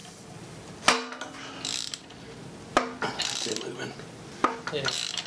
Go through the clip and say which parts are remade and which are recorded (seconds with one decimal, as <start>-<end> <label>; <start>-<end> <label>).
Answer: 0.0-0.7 remade; 0.7-5.3 recorded